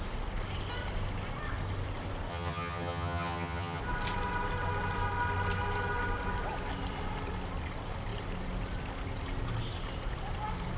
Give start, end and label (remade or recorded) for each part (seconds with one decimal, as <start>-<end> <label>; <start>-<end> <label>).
0.0-2.3 recorded; 2.3-3.8 remade; 3.8-10.8 recorded